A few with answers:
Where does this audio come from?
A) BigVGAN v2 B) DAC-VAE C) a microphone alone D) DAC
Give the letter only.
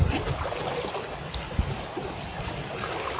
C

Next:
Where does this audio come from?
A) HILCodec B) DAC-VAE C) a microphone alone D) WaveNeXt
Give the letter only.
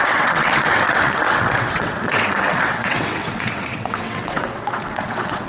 D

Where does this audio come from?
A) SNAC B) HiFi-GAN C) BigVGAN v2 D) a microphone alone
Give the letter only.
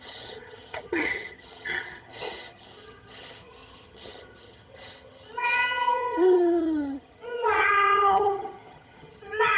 B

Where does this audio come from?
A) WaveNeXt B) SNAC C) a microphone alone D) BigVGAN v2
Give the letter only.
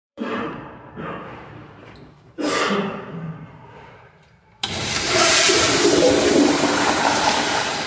D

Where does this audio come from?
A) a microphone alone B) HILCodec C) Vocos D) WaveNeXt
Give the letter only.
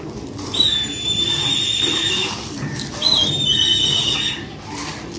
A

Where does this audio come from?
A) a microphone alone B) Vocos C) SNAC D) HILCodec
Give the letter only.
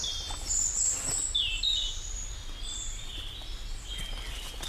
A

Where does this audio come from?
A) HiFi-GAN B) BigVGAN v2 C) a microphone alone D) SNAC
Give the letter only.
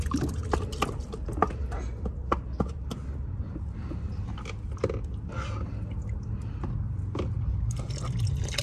C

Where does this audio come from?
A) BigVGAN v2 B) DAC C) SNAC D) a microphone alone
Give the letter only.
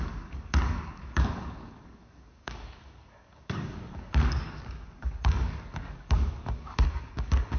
B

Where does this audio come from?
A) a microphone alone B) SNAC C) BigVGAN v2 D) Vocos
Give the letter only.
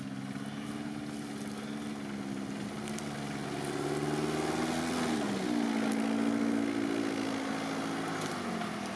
A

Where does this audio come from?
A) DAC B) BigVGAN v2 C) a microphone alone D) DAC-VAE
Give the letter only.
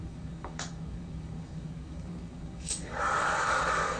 A